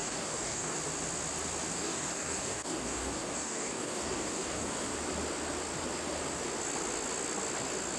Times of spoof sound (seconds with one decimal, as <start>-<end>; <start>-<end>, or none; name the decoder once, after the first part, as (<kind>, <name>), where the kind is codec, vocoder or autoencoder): 0.0-0.8 (codec, DAC); 1.7-4.9